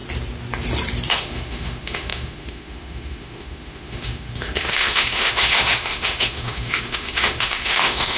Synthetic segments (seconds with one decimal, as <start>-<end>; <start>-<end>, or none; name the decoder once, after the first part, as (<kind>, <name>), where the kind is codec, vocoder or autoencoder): 1.1-8.2 (autoencoder, DAC-VAE)